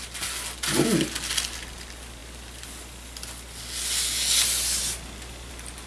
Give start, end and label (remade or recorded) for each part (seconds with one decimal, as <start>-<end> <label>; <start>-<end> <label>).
0.0-5.9 recorded